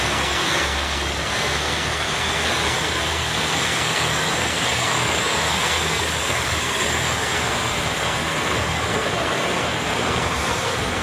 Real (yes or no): no